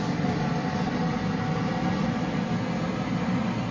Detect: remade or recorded recorded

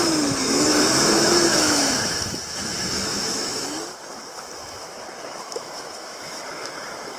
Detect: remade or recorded remade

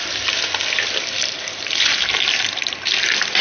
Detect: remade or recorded recorded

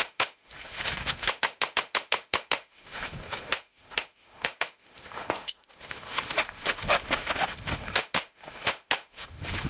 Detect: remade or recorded remade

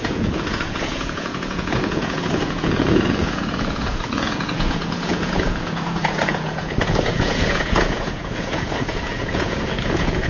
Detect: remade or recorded remade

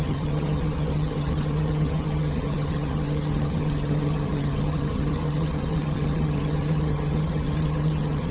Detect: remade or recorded remade